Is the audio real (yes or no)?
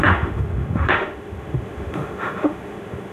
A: no